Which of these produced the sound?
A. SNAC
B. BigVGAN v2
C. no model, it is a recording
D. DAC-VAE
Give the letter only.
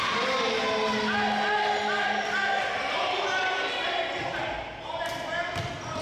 C